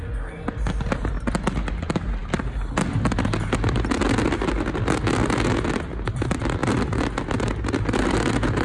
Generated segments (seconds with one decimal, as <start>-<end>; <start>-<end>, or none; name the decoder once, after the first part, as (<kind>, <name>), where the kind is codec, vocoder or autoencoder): none